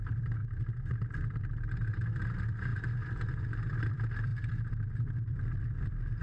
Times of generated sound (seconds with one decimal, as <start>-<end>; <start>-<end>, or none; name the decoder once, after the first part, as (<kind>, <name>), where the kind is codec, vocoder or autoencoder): 0.0-0.4 (vocoder, BigVGAN v2); 1.3-6.2